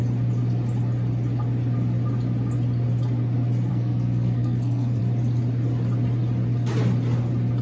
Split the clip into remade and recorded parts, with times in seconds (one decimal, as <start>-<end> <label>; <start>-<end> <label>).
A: 0.0-3.7 recorded; 3.7-5.0 remade; 5.0-7.6 recorded

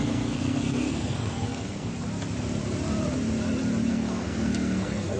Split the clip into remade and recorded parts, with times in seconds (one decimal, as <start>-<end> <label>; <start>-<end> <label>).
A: 0.0-1.9 remade; 1.9-3.9 recorded; 3.9-5.2 remade